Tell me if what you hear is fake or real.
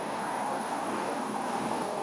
fake